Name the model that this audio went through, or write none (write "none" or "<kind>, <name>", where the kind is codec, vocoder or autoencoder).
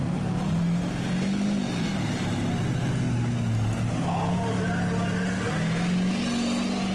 none